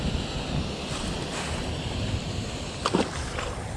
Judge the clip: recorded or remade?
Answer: recorded